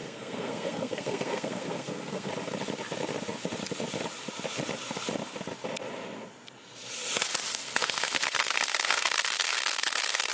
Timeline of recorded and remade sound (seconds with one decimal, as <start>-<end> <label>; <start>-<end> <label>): 0.0-2.3 remade; 2.3-7.5 recorded; 7.5-10.3 remade